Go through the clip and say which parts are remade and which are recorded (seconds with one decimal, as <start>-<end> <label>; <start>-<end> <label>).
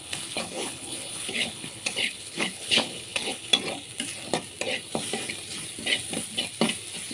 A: 0.0-3.5 remade; 3.5-7.1 recorded